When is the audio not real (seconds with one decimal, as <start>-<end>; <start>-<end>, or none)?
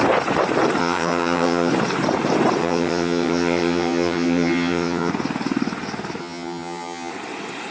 0.8-1.7; 2.6-5.1; 6.2-7.1